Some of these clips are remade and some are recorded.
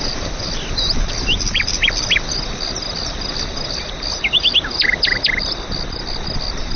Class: recorded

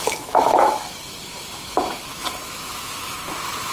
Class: remade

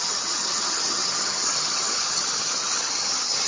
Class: remade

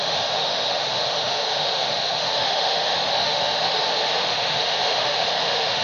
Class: remade